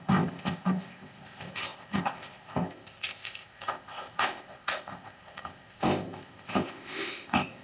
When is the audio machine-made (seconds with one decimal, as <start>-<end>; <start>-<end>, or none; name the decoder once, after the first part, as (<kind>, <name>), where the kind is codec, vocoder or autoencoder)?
0.0-7.6 (codec, ZipCodec)